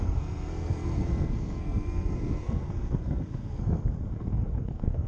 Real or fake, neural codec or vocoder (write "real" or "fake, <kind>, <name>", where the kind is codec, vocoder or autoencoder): fake, codec, SNAC